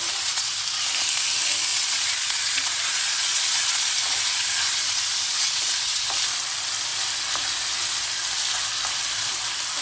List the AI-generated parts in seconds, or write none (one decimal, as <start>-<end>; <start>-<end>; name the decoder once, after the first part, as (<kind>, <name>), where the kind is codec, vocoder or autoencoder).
0.0-0.6 (vocoder, Vocos); 1.7-6.0

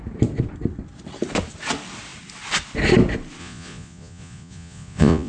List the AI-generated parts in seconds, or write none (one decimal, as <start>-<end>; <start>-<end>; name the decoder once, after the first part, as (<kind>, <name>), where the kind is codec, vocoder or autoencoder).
3.4-5.3 (vocoder, Vocos)